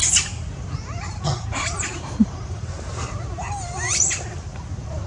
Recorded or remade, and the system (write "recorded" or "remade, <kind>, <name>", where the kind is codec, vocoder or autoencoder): remade, vocoder, BigVGAN v2